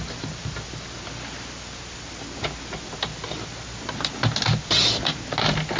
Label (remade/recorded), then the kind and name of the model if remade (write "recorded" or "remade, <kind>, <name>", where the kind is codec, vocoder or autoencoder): recorded